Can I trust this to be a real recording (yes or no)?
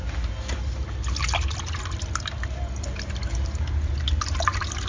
yes